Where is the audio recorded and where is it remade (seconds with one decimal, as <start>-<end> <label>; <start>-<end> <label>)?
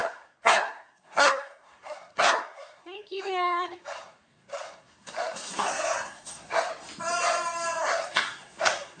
0.0-6.7 remade; 6.7-7.8 recorded; 7.8-9.0 remade